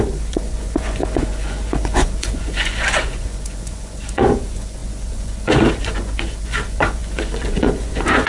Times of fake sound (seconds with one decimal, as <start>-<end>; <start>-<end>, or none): 0.0-8.3